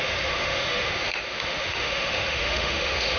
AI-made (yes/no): yes